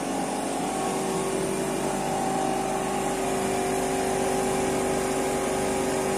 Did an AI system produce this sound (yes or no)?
no